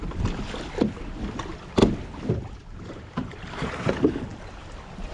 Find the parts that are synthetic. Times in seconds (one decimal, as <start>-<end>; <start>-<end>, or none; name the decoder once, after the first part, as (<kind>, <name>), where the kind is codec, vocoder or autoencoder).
0.0-1.8 (vocoder, BigVGAN v2); 2.3-5.1